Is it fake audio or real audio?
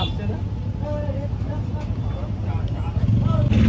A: real